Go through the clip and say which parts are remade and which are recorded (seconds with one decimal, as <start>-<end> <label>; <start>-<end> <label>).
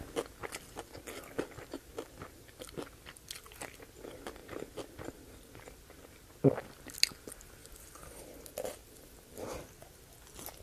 0.0-7.6 recorded; 7.6-8.5 remade; 8.5-10.6 recorded